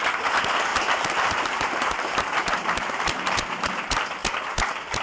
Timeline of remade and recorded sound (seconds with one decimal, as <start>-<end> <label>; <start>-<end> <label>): 0.0-0.7 recorded; 0.7-3.7 remade; 3.7-5.0 recorded